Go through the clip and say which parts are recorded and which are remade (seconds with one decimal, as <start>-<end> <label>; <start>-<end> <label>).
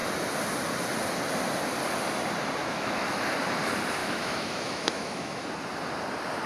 0.0-2.6 recorded; 2.6-3.2 remade; 3.2-4.0 recorded; 4.0-5.4 remade; 5.4-6.5 recorded